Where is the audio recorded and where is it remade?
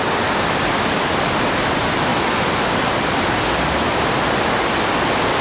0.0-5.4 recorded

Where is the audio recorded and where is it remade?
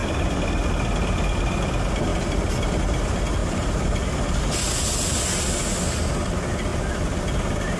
0.0-3.4 recorded; 3.4-4.4 remade; 4.4-7.8 recorded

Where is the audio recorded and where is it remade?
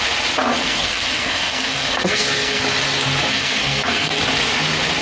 0.0-0.5 recorded; 0.5-2.6 remade; 2.6-3.3 recorded; 3.3-4.2 remade; 4.2-5.0 recorded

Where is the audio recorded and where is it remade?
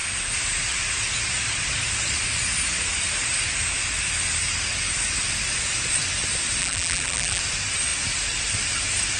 0.0-6.6 recorded; 6.6-7.4 remade; 7.4-9.2 recorded